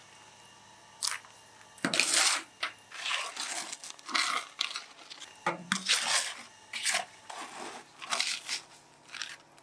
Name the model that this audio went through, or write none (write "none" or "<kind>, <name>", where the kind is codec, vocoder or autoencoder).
none